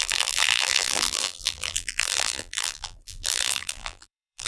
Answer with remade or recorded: remade